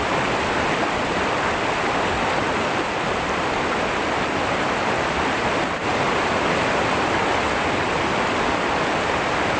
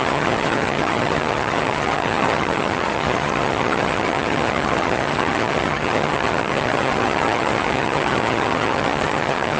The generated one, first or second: second